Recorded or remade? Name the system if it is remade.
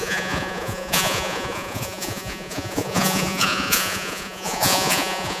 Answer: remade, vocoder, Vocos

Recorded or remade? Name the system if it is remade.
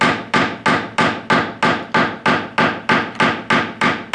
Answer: recorded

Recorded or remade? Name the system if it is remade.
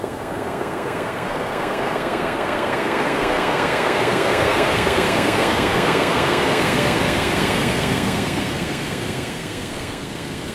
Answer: remade, codec, SNAC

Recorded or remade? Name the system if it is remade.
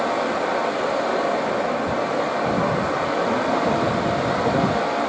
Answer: recorded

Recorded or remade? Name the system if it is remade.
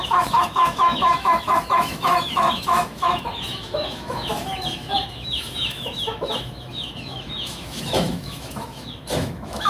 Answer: remade, autoencoder, DAC-VAE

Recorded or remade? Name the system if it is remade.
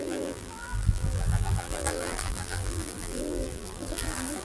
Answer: remade, vocoder, BigVGAN v2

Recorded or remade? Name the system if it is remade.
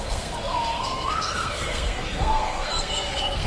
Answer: remade, codec, SNAC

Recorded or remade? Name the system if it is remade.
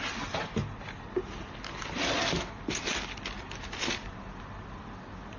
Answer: recorded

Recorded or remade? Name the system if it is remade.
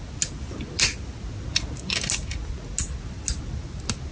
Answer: recorded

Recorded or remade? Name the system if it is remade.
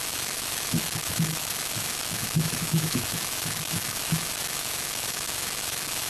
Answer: remade, autoencoder, DAC-VAE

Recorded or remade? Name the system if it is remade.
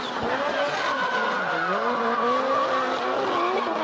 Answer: recorded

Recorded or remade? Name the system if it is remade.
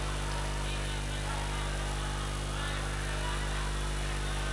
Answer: recorded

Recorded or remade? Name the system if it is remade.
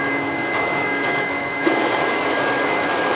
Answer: remade, autoencoder, DAC-VAE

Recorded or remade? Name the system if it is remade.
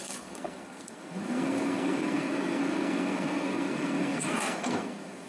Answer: remade, codec, SNAC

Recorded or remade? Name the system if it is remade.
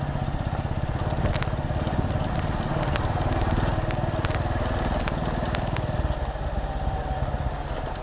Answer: recorded